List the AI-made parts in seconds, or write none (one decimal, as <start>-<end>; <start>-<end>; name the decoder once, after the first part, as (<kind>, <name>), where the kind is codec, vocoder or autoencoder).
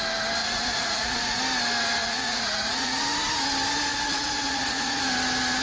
0.4-1.4 (vocoder, Vocos); 2.0-3.0; 3.9-5.0